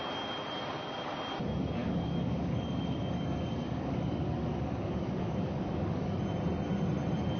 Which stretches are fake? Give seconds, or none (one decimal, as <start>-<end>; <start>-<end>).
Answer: 1.8-6.2